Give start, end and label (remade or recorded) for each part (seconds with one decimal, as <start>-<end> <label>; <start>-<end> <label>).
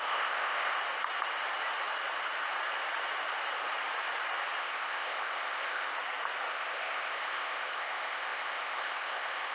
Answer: 0.0-0.8 remade; 0.8-4.6 recorded; 4.6-5.9 remade; 5.9-6.5 recorded; 6.5-9.5 remade